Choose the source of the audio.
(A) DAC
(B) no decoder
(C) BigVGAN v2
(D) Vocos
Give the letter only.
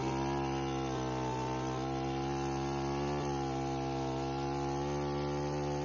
B